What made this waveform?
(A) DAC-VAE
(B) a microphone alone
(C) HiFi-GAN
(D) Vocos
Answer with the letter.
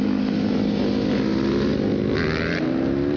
B